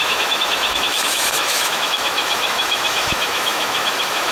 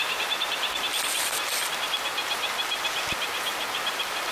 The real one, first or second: second